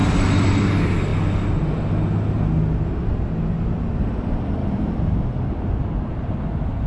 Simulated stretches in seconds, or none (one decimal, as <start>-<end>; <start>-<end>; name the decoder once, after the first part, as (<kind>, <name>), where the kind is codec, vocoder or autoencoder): 0.0-0.7 (vocoder, BigVGAN v2); 4.6-6.1